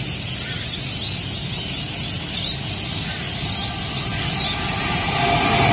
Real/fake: real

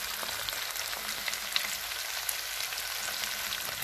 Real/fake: real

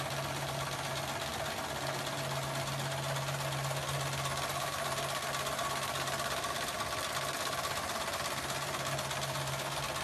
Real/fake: real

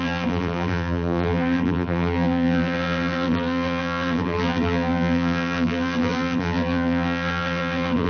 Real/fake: fake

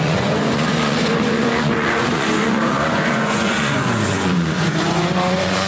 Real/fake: fake